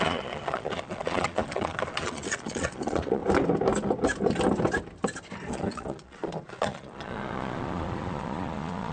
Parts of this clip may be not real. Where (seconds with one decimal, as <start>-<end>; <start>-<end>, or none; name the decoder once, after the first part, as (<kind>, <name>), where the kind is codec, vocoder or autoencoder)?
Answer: 0.0-3.2 (vocoder, Vocos); 5.5-8.9